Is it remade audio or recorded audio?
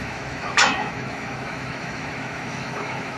remade